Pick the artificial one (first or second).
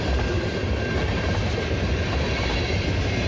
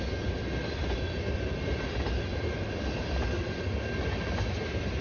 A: first